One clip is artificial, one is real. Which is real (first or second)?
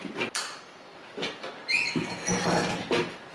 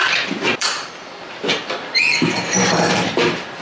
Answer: first